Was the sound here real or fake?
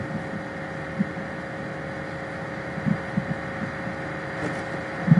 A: real